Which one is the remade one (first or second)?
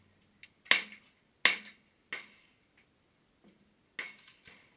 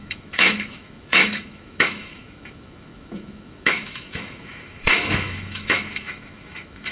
second